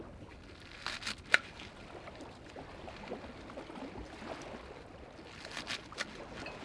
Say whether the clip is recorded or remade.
recorded